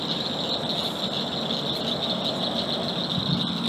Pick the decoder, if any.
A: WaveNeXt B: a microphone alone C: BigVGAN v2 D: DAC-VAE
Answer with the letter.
B